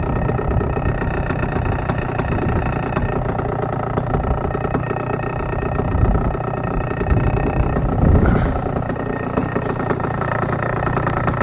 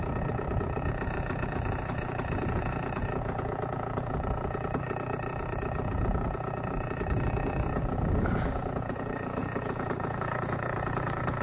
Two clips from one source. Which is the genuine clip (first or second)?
first